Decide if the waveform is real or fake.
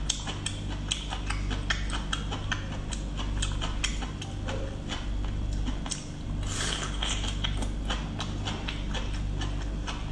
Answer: real